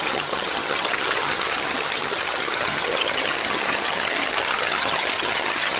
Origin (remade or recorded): remade